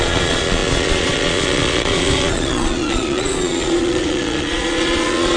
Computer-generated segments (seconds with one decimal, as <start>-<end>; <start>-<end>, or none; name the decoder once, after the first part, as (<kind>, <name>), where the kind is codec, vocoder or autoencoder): 0.0-5.4 (vocoder, Vocos)